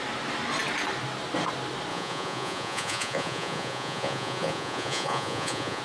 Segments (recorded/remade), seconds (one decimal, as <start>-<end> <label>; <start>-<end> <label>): 0.0-1.9 recorded; 1.9-5.8 remade